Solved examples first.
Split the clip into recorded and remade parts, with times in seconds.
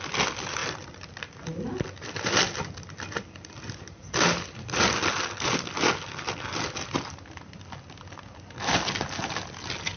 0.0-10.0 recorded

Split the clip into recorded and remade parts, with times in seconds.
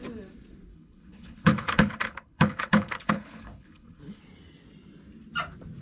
0.0-0.7 recorded; 0.7-4.2 remade; 4.2-5.8 recorded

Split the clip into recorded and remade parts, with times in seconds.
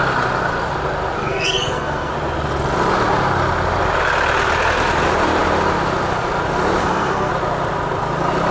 0.0-1.2 recorded; 1.2-2.1 remade; 2.1-6.8 recorded; 6.8-7.3 remade; 7.3-8.5 recorded